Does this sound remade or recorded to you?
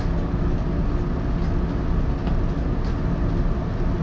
recorded